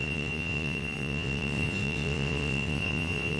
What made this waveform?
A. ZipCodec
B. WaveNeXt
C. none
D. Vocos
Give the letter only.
B